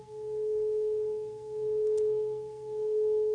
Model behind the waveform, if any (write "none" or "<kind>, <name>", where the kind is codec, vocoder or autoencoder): codec, SNAC